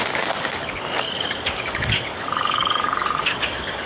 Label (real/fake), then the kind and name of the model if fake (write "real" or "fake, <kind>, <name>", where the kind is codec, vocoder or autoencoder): fake, codec, DAC